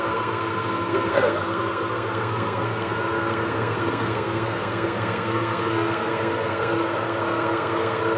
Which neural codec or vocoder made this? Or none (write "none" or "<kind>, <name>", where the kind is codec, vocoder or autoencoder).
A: codec, SNAC